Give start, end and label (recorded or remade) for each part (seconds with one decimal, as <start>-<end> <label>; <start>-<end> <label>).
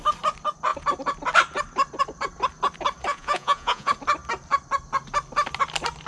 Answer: 0.0-3.1 recorded; 3.1-3.9 remade; 3.9-6.1 recorded